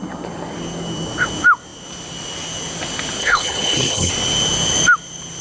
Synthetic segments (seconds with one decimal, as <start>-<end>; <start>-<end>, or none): 3.2-4.1